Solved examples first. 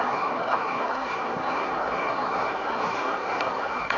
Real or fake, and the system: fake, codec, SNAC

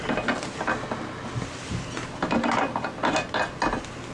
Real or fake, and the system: real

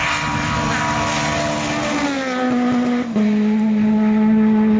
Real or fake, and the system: real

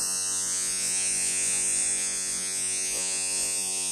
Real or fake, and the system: fake, vocoder, Vocos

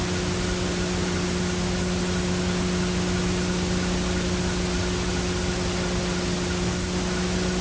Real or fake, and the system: real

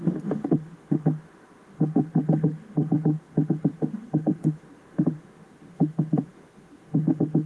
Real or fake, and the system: fake, autoencoder, DAC-VAE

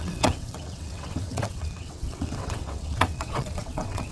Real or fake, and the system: fake, vocoder, WaveNeXt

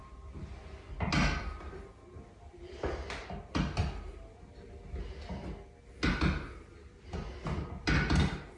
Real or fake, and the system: real